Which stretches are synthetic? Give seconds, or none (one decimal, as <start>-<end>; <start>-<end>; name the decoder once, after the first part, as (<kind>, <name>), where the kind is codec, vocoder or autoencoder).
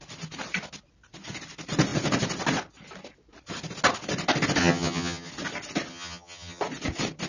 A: 4.6-5.3 (vocoder, HiFi-GAN); 5.9-6.6